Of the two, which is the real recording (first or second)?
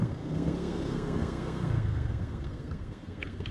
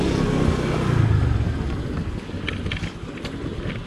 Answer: second